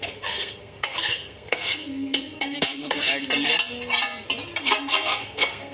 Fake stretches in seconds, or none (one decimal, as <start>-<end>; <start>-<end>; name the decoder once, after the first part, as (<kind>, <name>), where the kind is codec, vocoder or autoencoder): 0.0-3.1 (codec, SNAC); 4.6-5.7